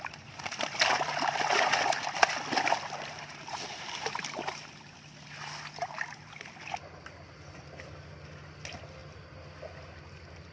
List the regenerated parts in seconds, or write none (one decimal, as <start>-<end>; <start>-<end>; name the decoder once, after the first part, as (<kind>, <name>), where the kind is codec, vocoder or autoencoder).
none